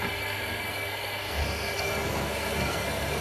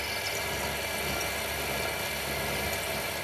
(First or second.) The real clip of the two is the second